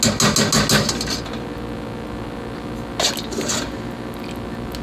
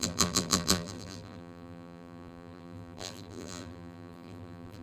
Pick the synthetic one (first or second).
second